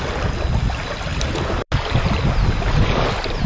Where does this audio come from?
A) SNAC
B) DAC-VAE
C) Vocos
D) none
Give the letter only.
D